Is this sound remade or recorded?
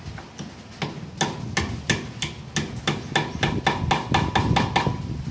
recorded